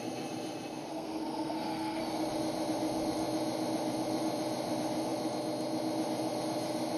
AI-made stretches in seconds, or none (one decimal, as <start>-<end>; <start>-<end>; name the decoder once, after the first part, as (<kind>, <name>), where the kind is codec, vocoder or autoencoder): 0.9-2.0 (codec, SNAC)

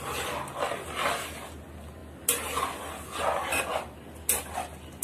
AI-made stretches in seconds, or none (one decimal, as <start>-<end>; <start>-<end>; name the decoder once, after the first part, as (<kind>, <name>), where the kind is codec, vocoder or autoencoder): none

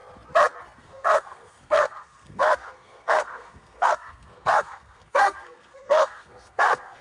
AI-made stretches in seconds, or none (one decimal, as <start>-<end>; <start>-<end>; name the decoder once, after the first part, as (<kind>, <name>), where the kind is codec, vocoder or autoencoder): 0.8-7.0 (codec, SNAC)

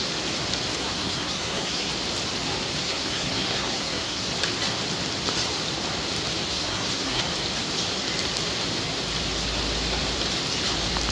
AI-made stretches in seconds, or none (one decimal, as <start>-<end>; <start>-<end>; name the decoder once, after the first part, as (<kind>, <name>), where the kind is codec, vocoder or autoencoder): 0.8-1.9 (codec, SNAC); 2.8-4.3; 6.5-7.2

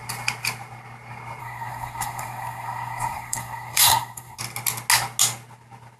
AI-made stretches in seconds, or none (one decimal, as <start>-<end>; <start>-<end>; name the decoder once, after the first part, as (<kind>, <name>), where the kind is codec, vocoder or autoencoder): 1.4-4.4 (codec, SNAC)